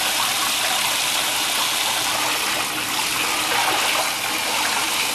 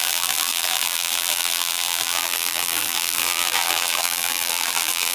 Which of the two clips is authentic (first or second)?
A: first